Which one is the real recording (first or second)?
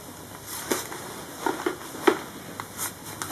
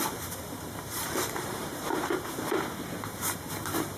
first